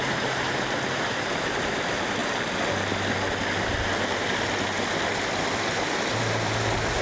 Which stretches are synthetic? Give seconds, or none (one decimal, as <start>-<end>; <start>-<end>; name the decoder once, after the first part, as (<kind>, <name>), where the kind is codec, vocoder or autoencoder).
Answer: 0.0-2.2 (vocoder, BigVGAN v2); 6.2-7.0